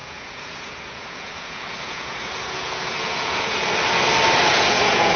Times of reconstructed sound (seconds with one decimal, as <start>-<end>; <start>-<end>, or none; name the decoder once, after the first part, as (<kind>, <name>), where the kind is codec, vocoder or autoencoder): 0.0-3.6 (vocoder, Vocos); 4.5-5.2